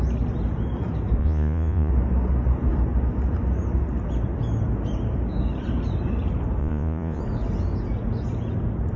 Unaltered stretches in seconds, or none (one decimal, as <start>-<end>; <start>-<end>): 0.0-1.2; 1.9-6.6; 7.2-9.0